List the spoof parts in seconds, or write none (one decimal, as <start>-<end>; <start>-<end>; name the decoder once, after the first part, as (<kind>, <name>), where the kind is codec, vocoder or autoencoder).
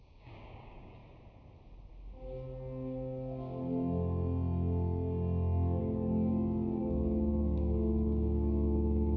0.0-1.0 (codec, DAC); 5.8-6.3; 6.8-9.2